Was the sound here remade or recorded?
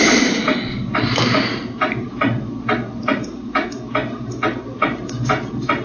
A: recorded